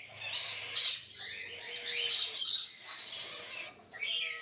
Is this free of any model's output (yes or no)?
yes